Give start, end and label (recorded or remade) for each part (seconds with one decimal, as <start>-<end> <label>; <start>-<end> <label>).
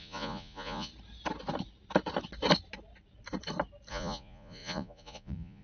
0.0-0.9 remade; 0.9-3.9 recorded; 3.9-5.6 remade